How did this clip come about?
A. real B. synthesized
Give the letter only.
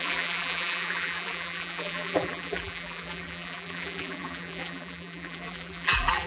B